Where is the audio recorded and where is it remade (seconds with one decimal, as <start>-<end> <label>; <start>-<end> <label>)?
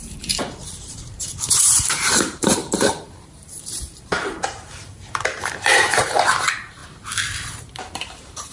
0.0-6.8 remade; 6.8-7.6 recorded; 7.6-8.5 remade